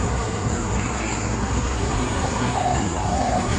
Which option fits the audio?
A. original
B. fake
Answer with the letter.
B